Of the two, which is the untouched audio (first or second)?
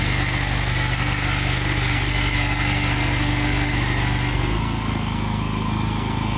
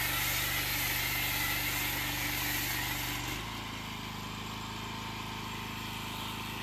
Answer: second